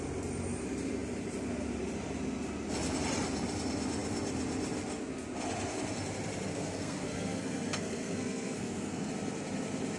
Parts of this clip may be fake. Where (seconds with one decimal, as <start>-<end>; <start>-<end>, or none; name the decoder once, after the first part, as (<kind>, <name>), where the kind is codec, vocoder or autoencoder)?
6.5-9.1 (codec, SNAC)